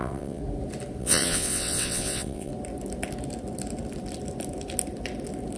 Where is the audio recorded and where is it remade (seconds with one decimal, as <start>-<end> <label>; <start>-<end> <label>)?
0.0-0.4 remade; 0.4-1.0 recorded; 1.0-2.5 remade; 2.5-5.6 recorded